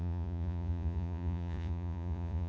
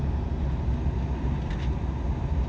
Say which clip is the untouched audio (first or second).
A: second